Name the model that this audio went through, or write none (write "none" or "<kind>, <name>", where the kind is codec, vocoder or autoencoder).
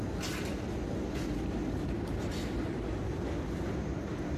none